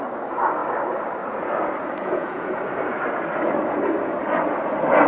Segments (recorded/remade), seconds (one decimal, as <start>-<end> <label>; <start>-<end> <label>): 0.0-2.0 recorded; 2.0-2.6 remade; 2.6-5.1 recorded

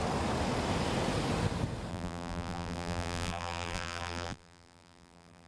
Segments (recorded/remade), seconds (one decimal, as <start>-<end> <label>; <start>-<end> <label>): 0.0-1.9 recorded; 1.9-5.5 remade

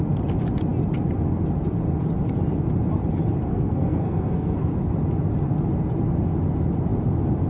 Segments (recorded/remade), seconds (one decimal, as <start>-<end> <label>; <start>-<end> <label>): 0.0-3.5 recorded; 3.5-4.7 remade; 4.7-7.5 recorded

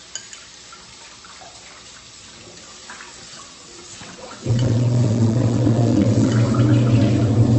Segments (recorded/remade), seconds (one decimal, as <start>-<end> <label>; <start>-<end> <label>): 0.0-3.3 recorded; 3.3-6.3 remade; 6.3-7.6 recorded

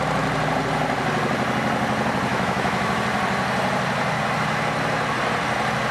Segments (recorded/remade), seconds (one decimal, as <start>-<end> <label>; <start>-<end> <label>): 0.0-2.3 recorded; 2.3-3.0 remade; 3.0-5.9 recorded

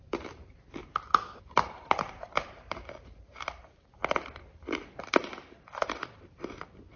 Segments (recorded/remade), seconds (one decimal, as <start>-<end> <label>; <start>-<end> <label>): 0.0-0.8 remade; 0.8-1.4 recorded; 1.4-4.0 remade; 4.0-5.4 recorded; 5.4-7.0 remade

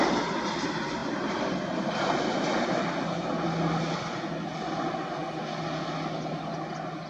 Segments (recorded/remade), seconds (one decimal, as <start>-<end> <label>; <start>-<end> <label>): 0.0-1.0 recorded; 1.0-1.5 remade; 1.5-7.1 recorded